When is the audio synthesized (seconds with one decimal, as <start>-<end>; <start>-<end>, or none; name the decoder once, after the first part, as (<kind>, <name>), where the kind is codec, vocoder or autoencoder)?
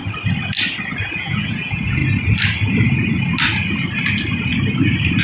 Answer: 1.1-2.0 (vocoder, Vocos)